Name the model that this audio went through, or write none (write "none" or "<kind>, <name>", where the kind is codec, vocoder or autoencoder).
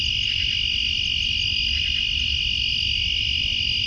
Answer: none